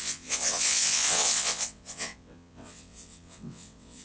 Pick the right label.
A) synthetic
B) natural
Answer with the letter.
A